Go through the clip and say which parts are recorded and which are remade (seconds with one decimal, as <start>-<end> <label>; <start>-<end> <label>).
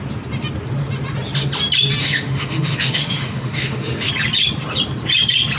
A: 0.0-2.0 recorded; 2.0-4.1 remade; 4.1-5.6 recorded